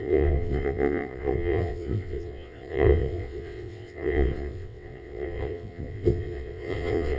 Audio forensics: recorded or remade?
remade